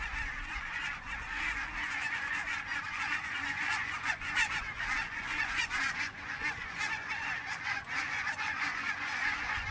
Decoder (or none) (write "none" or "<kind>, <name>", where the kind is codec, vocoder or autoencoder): vocoder, Vocos